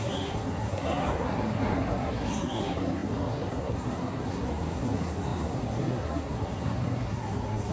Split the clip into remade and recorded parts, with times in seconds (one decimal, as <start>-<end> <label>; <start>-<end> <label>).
0.0-7.7 remade